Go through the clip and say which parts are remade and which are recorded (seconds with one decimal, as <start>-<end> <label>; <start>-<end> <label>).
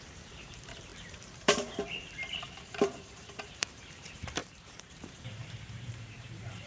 0.0-6.7 remade